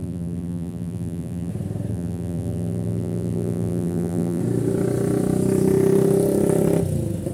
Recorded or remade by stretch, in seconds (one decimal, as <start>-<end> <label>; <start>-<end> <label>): 0.0-1.5 remade; 1.5-1.9 recorded; 1.9-4.4 remade; 4.4-7.3 recorded